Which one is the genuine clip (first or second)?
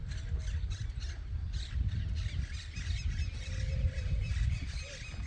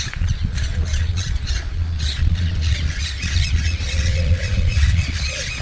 first